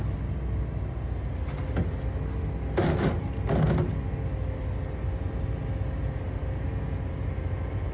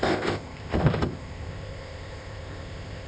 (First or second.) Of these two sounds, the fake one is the second